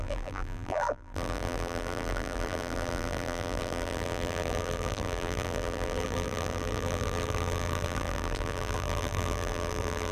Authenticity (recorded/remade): remade